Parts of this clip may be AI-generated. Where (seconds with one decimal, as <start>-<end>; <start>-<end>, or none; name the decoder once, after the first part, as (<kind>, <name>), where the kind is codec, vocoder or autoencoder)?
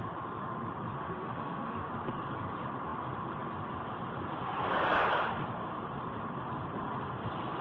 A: 0.9-1.9 (autoencoder, DAC-VAE)